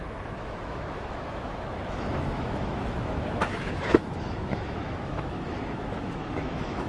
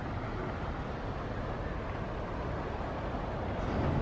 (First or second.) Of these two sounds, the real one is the second